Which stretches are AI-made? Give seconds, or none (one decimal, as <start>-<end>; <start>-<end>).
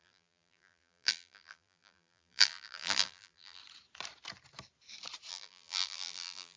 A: 0.0-3.6; 5.3-6.6